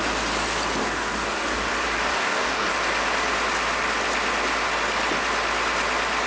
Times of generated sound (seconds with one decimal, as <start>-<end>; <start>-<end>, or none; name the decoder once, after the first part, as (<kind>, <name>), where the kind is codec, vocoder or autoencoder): 0.8-1.7 (codec, DAC); 2.1-2.7

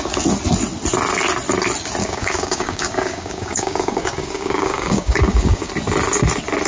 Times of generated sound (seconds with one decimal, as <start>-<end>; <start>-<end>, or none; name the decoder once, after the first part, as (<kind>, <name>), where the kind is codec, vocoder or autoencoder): 2.0-5.7 (codec, DAC)

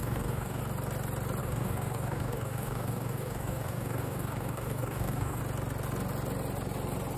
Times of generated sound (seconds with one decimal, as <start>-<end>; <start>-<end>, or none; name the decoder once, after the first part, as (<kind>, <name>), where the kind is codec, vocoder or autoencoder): 0.0-0.6 (codec, DAC); 1.4-5.4

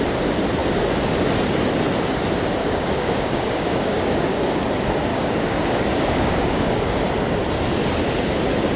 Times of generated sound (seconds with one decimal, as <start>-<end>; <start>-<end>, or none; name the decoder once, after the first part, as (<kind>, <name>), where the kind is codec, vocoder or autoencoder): 2.6-4.6 (codec, DAC); 5.1-7.0